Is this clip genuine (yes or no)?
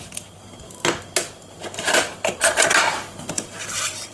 no